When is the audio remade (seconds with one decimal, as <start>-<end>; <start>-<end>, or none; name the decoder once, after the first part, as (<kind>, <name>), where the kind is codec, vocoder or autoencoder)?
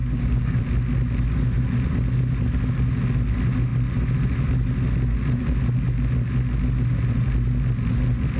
0.0-0.6 (codec, DAC)